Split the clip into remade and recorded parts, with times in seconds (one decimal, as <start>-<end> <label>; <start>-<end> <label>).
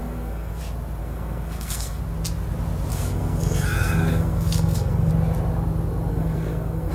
0.0-0.6 remade; 0.6-1.0 recorded; 1.0-2.0 remade; 2.0-2.9 recorded; 2.9-5.1 remade; 5.1-6.1 recorded; 6.1-6.9 remade